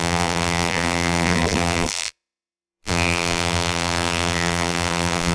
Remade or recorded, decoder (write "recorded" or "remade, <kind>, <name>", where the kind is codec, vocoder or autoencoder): remade, vocoder, BigVGAN v2